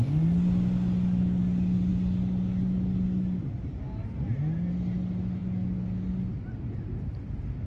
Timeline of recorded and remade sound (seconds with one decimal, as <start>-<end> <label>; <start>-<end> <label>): 0.0-7.7 recorded